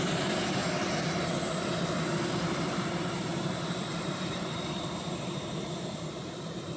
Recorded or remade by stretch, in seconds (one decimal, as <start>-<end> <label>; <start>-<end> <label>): 0.0-0.6 remade; 0.6-2.3 recorded; 2.3-6.8 remade